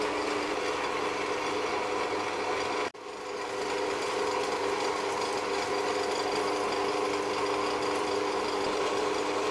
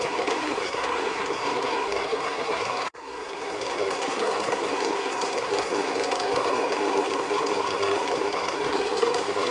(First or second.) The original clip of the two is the first